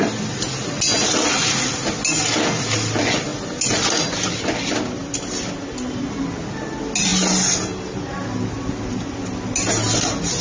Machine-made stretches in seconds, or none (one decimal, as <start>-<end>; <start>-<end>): none